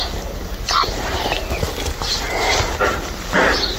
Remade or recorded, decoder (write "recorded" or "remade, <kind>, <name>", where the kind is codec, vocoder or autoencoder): recorded